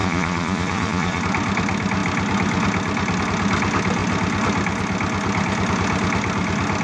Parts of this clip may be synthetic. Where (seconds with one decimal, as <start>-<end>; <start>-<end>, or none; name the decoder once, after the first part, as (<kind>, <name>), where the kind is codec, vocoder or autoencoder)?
0.0-1.2 (vocoder, Vocos)